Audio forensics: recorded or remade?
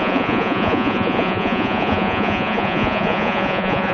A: remade